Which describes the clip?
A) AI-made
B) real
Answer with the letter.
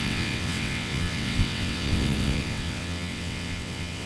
A